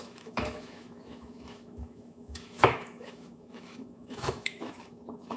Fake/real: fake